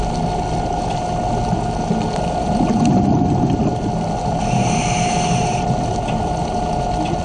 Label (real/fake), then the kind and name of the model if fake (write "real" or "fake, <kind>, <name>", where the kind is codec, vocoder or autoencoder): real